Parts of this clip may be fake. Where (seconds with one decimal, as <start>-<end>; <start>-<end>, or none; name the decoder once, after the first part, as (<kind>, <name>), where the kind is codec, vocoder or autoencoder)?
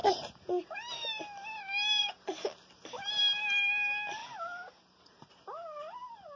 none